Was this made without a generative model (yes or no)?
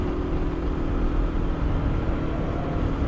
yes